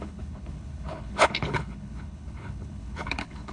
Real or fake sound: fake